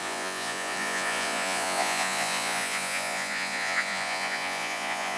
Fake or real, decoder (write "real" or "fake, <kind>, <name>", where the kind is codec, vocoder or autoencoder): fake, vocoder, Vocos